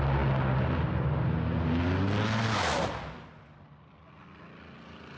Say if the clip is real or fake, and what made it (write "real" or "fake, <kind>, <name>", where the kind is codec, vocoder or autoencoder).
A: real